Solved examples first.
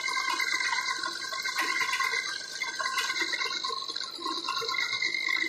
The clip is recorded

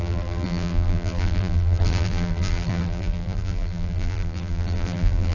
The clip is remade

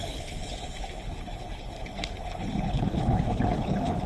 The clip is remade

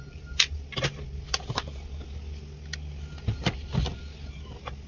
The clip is recorded